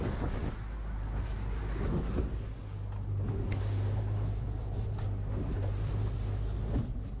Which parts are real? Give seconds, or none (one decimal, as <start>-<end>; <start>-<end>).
0.0-7.2